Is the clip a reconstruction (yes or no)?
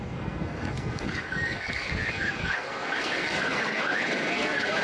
yes